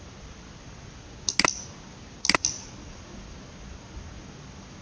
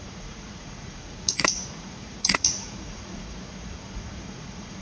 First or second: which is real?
first